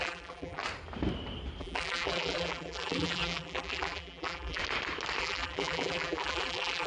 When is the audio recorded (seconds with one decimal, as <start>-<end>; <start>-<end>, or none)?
0.6-1.6; 4.6-5.2